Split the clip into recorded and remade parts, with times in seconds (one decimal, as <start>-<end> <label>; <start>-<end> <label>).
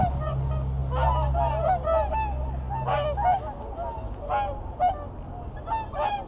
0.0-6.3 recorded